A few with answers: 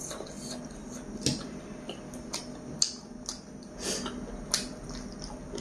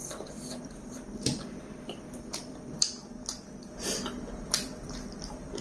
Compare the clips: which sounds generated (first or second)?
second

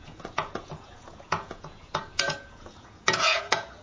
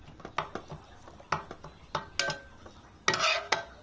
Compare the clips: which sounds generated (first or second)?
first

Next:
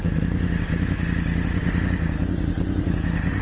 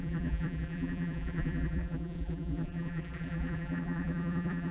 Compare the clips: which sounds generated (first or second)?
second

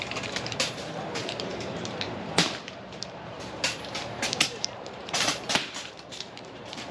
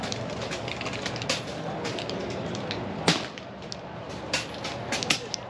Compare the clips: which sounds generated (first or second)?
first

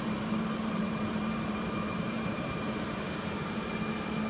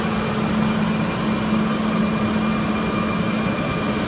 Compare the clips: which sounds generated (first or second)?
first